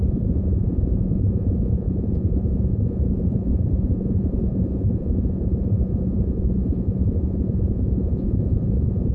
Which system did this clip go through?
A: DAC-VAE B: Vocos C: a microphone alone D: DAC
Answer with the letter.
B